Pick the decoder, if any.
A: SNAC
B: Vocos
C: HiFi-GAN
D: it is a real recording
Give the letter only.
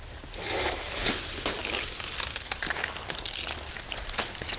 D